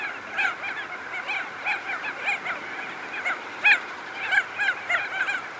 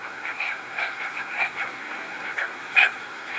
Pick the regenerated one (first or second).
second